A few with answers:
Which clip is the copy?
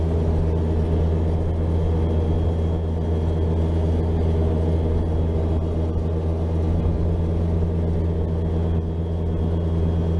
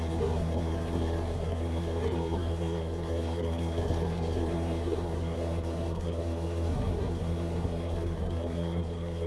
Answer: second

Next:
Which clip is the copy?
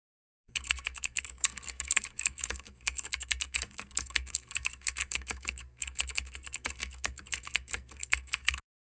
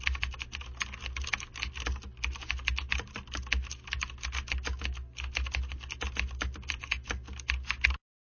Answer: first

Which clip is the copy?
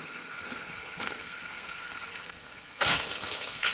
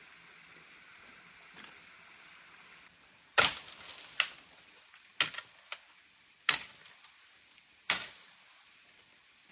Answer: first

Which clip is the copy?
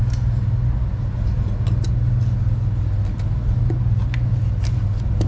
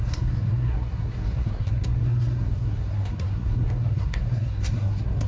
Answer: second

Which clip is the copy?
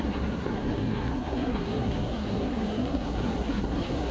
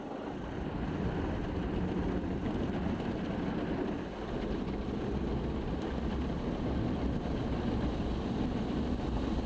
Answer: first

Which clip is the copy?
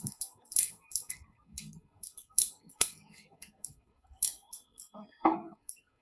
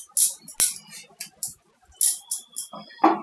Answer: first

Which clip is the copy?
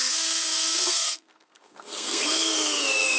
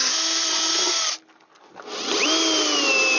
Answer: first